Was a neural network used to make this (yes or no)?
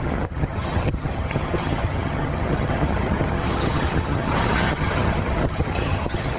yes